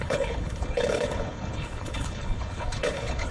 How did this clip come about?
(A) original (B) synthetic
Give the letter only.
B